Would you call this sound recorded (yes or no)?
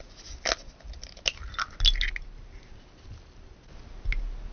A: yes